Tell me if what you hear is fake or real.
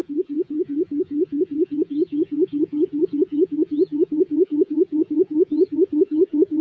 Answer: fake